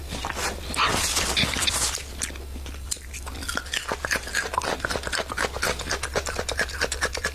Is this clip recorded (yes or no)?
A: yes